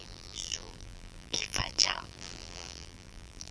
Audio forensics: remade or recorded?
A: remade